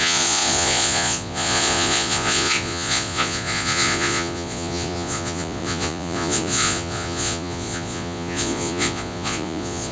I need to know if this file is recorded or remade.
remade